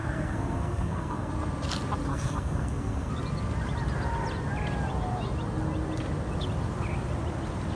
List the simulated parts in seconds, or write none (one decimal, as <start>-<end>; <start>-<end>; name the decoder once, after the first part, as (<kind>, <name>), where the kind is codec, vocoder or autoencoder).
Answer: 0.0-1.3 (codec, SNAC); 2.1-3.1